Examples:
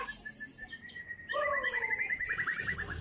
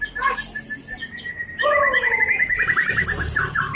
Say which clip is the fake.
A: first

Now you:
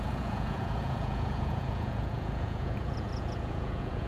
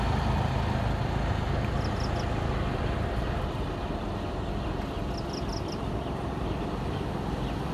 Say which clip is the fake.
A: first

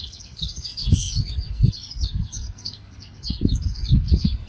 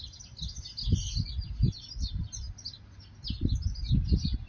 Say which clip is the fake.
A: first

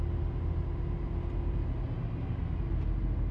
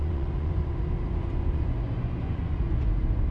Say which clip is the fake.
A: second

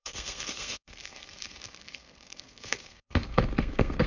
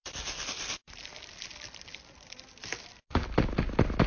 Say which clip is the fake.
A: first